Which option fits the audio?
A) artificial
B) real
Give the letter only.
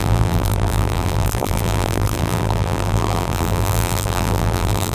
A